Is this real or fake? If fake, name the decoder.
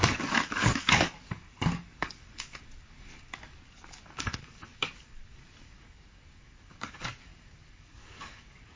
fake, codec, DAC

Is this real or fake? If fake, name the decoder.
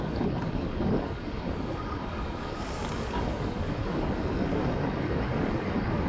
fake, codec, DAC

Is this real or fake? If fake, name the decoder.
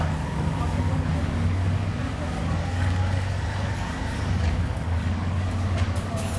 fake, codec, DAC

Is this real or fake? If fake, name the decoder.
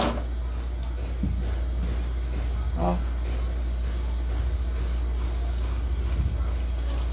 real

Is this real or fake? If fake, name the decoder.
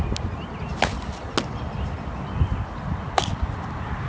real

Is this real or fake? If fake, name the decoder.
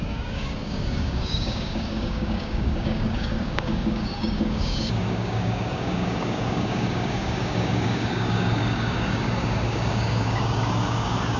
fake, codec, DAC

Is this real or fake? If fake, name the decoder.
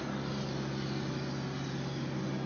real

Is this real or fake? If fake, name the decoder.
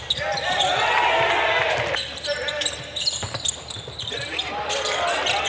real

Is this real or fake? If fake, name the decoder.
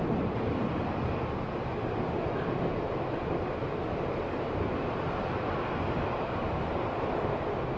real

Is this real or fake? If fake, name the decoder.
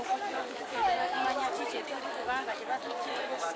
fake, codec, DAC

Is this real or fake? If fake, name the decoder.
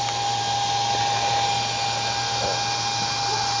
real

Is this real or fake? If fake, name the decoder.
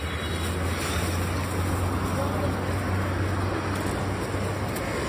real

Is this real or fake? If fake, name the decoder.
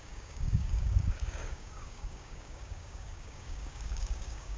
fake, codec, DAC